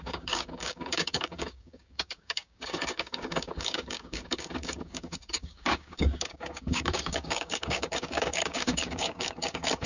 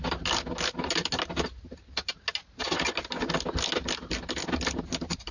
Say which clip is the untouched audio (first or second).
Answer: second